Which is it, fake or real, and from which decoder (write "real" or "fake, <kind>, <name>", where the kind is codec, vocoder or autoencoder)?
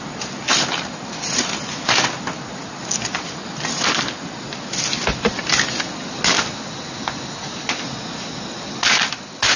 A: real